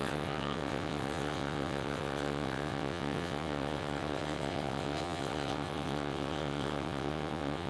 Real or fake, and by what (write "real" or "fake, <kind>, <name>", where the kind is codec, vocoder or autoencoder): fake, vocoder, WaveNeXt